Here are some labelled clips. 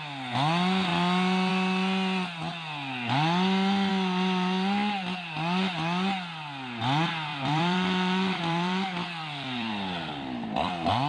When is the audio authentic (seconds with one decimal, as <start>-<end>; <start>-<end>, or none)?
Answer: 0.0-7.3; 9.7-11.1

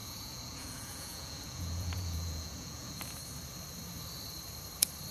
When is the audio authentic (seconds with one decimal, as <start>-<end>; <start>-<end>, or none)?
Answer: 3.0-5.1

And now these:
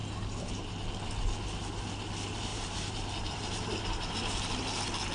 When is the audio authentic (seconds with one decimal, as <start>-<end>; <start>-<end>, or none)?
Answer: 0.7-2.5; 4.4-5.1

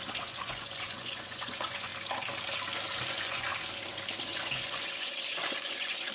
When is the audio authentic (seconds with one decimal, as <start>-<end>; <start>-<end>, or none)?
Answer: 1.9-3.1; 3.5-4.2

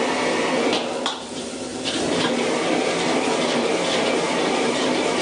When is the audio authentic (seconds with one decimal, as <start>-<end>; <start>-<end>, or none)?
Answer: 0.0-5.2

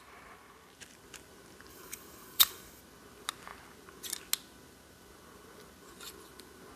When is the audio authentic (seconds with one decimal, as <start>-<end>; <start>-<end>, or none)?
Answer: 0.0-1.7; 2.8-6.8

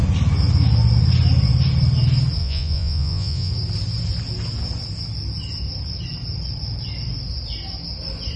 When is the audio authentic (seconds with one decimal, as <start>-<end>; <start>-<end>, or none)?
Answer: 0.0-2.4; 3.5-8.4